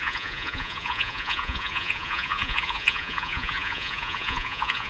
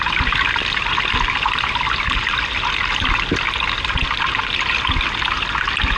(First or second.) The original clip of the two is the second